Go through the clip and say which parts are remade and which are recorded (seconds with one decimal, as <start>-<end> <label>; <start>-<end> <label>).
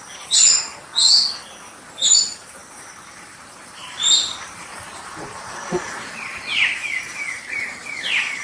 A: 0.0-2.6 recorded; 2.6-5.5 remade; 5.5-6.5 recorded; 6.5-7.6 remade; 7.6-8.4 recorded